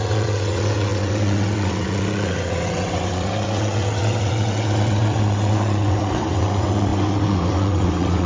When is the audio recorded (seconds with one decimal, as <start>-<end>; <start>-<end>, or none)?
none